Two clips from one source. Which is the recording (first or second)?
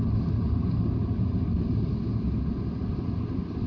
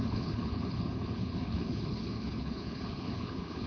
first